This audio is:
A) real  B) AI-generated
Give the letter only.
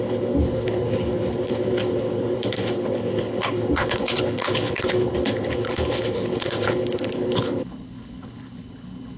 B